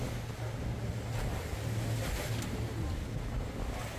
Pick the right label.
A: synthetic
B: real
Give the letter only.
B